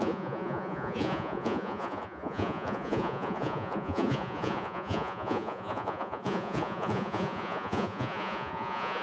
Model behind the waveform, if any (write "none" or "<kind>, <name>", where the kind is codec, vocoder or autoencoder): vocoder, Vocos